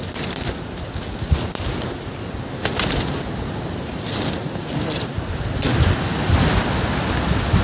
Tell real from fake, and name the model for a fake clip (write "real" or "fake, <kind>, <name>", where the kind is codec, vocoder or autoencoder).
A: real